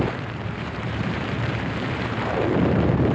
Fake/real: fake